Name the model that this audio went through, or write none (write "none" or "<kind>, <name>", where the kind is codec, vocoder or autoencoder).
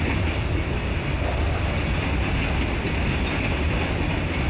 none